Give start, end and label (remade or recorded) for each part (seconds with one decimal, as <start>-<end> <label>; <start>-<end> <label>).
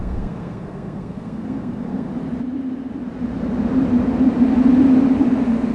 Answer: 0.0-2.1 remade; 2.1-5.7 recorded